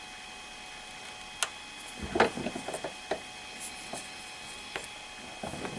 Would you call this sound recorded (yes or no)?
yes